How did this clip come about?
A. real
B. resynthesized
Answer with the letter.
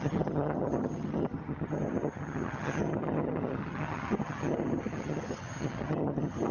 B